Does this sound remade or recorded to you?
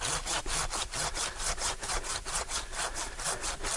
recorded